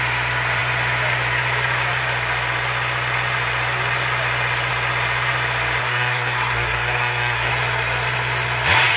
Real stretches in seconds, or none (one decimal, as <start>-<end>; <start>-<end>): 0.0-5.8; 7.5-9.0